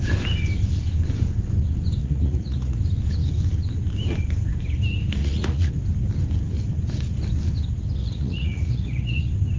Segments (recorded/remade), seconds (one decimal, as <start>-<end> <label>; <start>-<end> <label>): 0.0-2.0 recorded; 2.0-2.8 remade; 2.8-5.2 recorded; 5.2-5.7 remade; 5.7-8.0 recorded; 8.0-9.2 remade; 9.2-9.6 recorded